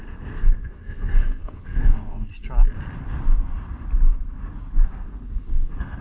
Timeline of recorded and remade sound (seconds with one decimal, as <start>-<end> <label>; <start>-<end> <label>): 0.0-2.3 remade; 2.3-4.9 recorded; 4.9-6.0 remade